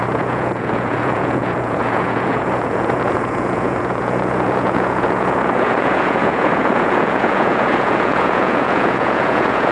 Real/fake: fake